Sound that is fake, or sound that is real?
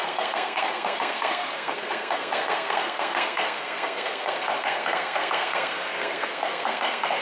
fake